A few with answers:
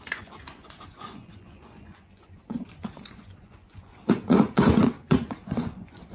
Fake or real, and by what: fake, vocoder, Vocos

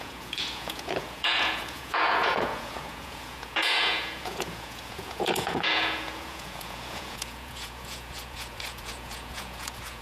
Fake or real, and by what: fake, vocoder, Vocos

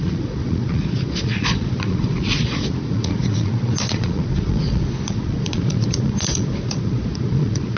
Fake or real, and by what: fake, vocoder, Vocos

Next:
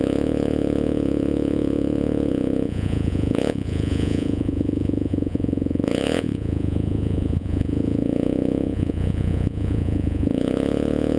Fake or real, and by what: fake, vocoder, Vocos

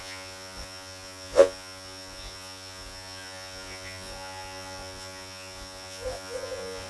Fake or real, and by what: fake, vocoder, Vocos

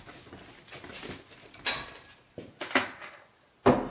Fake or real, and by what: real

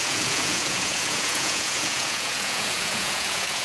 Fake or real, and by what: fake, vocoder, Vocos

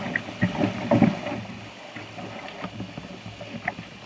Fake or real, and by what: real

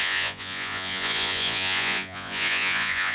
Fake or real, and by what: fake, vocoder, Vocos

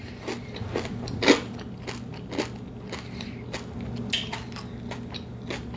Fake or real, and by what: real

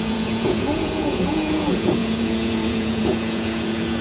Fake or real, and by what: fake, vocoder, Vocos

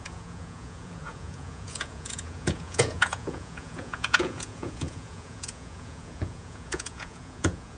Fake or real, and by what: fake, vocoder, Vocos